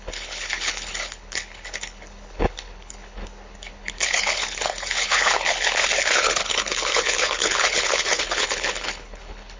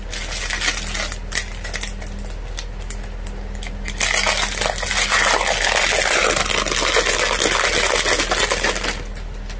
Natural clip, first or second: second